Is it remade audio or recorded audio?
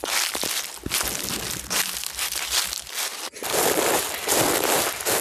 recorded